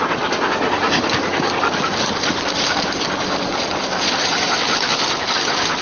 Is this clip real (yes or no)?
yes